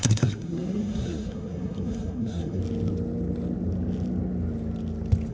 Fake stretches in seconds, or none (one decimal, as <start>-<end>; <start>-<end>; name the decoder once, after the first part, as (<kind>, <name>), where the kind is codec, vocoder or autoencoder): 0.0-2.6 (codec, SNAC)